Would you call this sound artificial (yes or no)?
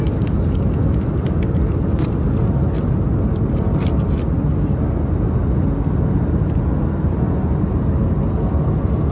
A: no